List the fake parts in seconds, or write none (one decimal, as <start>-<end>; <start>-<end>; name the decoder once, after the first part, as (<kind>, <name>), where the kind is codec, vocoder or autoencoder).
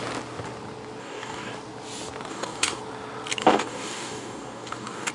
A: 1.0-1.5 (codec, DAC); 2.3-2.8; 3.4-5.1